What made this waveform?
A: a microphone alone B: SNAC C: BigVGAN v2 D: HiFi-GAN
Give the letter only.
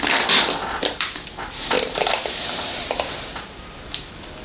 C